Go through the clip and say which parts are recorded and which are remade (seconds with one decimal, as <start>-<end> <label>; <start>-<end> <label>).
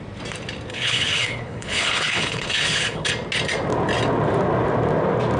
0.0-0.7 recorded; 0.7-3.1 remade; 3.1-5.4 recorded